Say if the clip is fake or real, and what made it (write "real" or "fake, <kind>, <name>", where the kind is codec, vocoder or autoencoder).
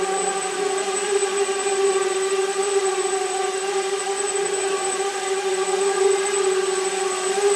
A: fake, vocoder, Vocos